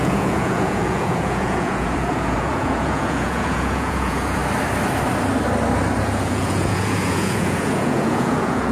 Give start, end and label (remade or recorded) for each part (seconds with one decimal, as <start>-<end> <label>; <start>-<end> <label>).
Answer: 0.0-4.4 remade; 4.4-6.0 recorded; 6.0-8.7 remade